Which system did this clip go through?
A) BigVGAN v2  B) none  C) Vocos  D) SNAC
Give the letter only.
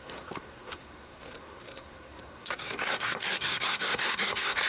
D